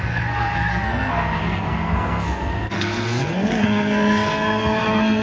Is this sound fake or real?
fake